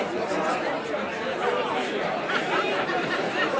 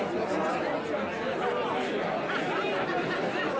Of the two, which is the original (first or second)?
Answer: second